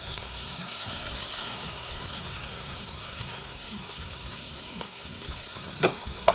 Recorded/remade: remade